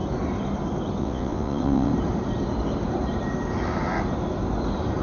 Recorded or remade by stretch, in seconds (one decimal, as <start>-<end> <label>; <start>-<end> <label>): 0.0-1.0 recorded; 1.0-1.9 remade; 1.9-5.0 recorded